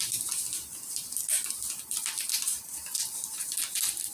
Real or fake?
real